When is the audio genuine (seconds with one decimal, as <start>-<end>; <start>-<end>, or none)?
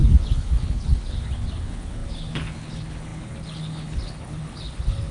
none